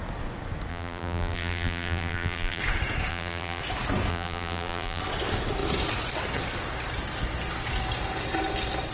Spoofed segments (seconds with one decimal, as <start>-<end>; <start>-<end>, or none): 0.7-2.6; 3.1-3.6; 4.1-5.0